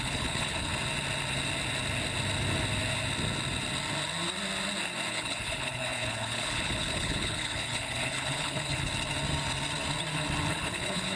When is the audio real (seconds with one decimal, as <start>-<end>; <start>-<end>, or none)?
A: 0.7-5.1; 8.9-10.5